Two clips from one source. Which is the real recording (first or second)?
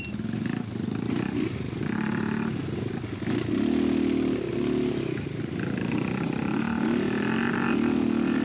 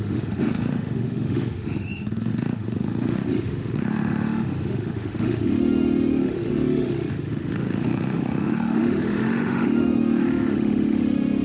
first